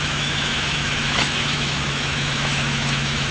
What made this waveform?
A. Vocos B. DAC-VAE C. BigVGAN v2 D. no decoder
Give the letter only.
B